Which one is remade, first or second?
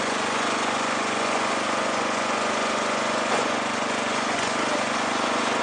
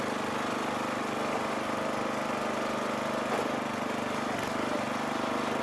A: first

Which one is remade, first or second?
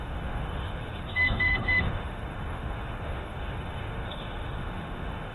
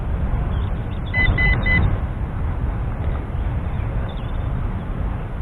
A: first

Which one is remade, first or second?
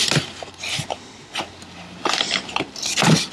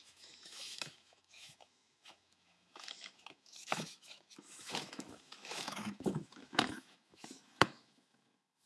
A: second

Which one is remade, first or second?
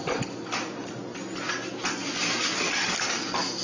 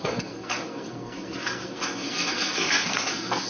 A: second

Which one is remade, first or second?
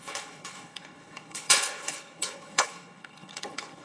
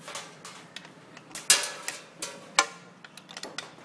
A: first